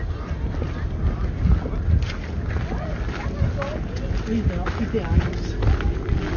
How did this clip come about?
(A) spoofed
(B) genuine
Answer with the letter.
B